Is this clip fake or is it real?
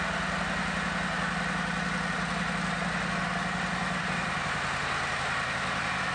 real